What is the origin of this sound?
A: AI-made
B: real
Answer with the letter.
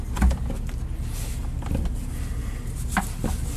B